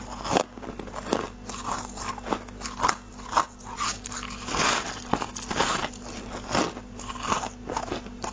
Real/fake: real